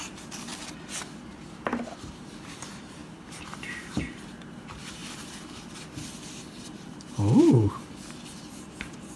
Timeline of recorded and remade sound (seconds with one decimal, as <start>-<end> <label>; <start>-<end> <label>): 0.0-0.5 remade; 0.5-1.5 recorded; 1.5-5.0 remade; 5.0-6.5 recorded; 6.5-9.2 remade